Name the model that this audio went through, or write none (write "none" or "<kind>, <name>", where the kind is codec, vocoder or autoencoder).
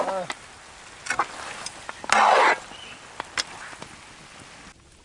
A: none